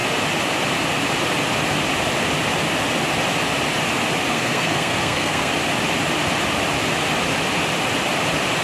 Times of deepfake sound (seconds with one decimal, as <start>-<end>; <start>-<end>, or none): 4.3-5.5